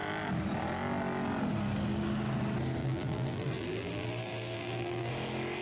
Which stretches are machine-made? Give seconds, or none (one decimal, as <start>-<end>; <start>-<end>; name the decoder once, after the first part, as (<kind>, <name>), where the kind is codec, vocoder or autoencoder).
2.8-5.1 (vocoder, BigVGAN v2)